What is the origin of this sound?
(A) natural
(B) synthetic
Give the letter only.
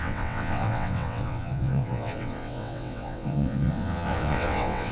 B